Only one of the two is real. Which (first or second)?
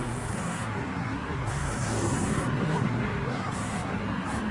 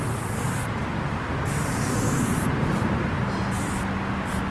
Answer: second